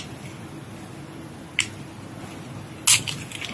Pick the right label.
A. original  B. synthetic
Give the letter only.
A